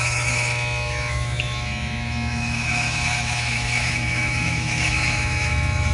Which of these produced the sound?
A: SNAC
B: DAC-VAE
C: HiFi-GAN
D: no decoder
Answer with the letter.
B